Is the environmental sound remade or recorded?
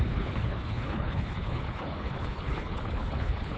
remade